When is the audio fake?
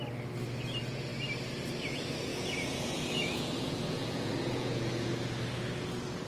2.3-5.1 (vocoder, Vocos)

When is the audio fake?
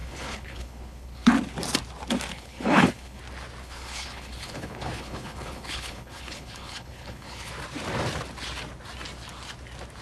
0.0-1.3 (codec, HILCodec); 2.3-3.2; 3.6-7.5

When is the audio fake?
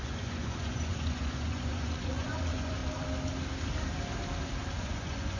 0.0-2.8 (vocoder, Vocos); 4.8-5.4